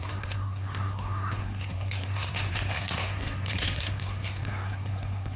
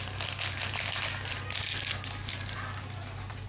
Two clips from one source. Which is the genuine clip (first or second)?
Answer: second